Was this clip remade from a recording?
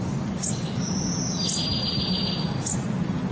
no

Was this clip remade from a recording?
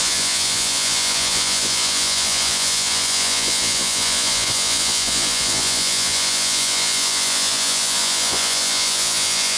yes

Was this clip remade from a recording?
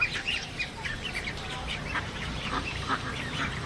yes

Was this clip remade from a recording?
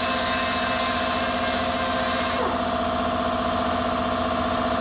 no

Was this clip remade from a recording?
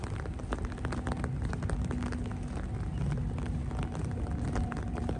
no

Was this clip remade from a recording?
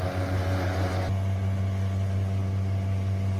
no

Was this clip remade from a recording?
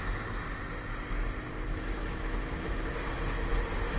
no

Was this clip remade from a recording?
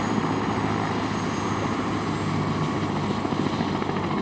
no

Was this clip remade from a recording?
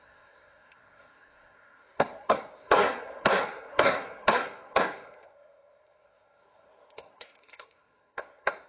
yes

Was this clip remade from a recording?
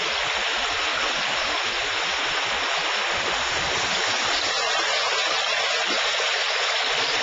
no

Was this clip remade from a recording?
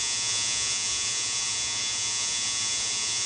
yes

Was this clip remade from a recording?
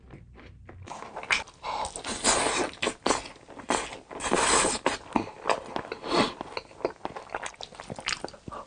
no